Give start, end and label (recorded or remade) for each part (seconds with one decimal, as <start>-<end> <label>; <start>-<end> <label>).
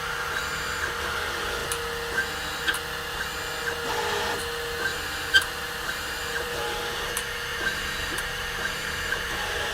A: 0.0-4.9 recorded; 4.9-6.8 remade; 6.8-7.5 recorded; 7.5-9.7 remade